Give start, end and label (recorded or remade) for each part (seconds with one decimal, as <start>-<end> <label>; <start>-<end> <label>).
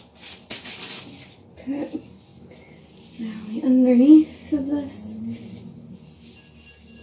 0.0-7.0 recorded